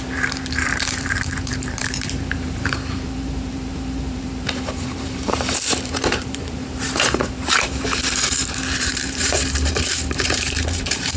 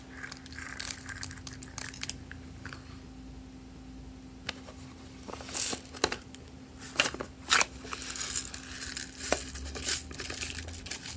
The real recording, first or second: second